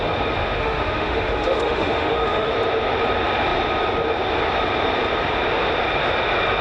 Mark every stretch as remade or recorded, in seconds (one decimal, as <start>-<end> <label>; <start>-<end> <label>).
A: 0.0-0.4 recorded; 0.4-2.5 remade; 2.5-6.6 recorded